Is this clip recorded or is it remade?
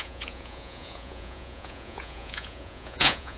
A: remade